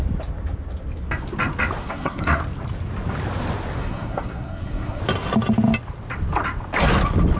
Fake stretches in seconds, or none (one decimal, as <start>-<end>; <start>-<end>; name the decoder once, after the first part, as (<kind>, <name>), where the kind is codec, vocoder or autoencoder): 1.8-2.4 (codec, SNAC); 3.8-5.0